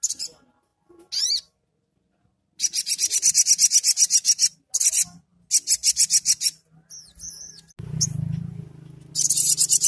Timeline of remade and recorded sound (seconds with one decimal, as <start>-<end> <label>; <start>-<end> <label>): 0.0-9.9 recorded